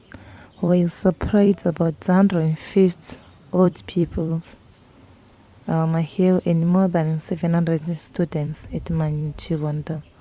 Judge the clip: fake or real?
fake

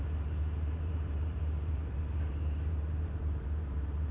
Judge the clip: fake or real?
fake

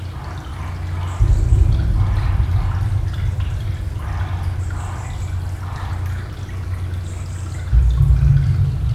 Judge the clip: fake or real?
real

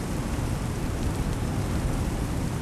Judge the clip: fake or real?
real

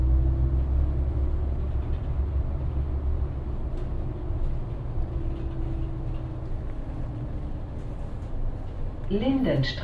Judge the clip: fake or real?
real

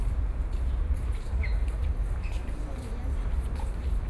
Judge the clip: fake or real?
fake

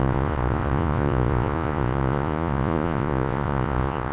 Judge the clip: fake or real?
fake